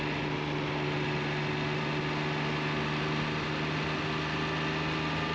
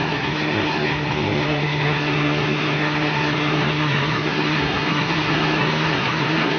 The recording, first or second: first